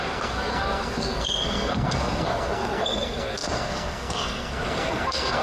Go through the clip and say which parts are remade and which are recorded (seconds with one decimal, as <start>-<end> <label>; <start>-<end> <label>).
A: 0.0-5.4 remade